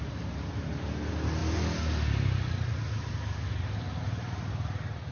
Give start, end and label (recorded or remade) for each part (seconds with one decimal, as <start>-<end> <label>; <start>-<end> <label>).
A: 0.0-5.1 recorded